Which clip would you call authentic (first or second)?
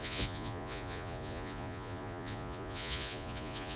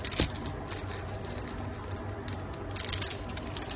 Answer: second